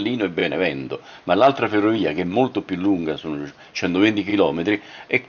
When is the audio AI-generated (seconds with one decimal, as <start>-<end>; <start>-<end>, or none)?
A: none